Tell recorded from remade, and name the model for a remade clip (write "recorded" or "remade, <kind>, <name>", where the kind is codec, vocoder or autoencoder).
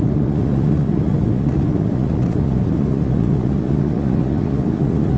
remade, vocoder, Vocos